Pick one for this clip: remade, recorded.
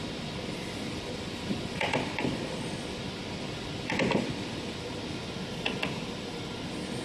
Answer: recorded